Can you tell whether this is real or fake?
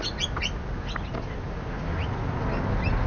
real